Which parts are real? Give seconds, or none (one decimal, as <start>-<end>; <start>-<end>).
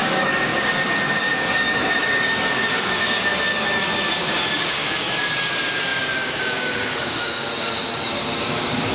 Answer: none